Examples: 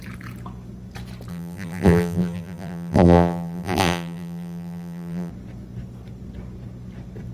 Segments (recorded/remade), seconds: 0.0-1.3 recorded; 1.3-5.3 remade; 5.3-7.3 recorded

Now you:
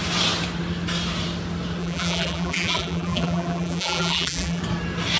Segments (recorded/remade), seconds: 0.0-1.8 recorded; 1.8-4.6 remade; 4.6-5.2 recorded